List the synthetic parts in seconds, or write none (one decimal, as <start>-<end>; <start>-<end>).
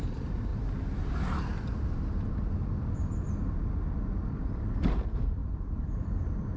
0.0-0.5; 4.5-6.6